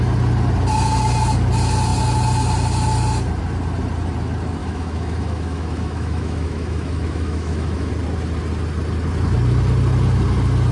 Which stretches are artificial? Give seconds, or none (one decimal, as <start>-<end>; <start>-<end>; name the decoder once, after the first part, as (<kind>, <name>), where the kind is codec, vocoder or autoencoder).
4.6-7.9 (autoencoder, DAC-VAE)